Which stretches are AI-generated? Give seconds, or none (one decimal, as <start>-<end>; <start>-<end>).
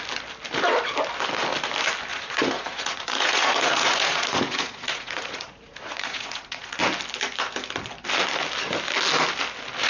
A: 2.1-6.8